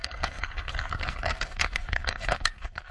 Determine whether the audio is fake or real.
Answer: fake